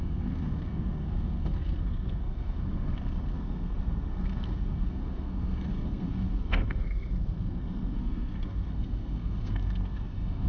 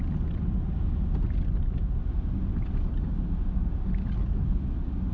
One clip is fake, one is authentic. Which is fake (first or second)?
first